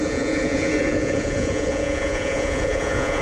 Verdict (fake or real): fake